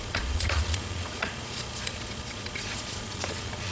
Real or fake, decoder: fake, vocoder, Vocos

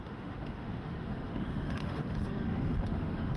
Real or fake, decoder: fake, autoencoder, DAC-VAE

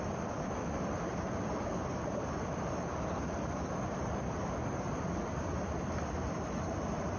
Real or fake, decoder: fake, vocoder, BigVGAN v2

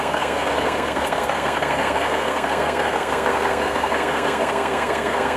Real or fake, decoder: fake, codec, SNAC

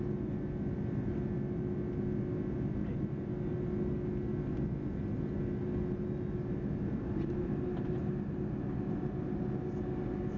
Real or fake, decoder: real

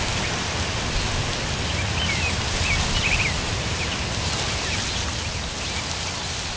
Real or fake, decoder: real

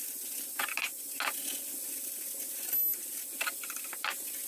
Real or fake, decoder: real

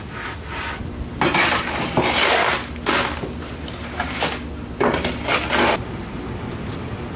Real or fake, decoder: real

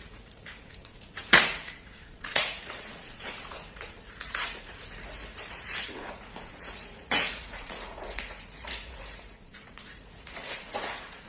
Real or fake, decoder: fake, vocoder, Vocos